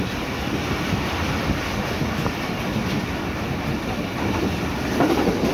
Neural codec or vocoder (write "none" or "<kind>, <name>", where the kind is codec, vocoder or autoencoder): none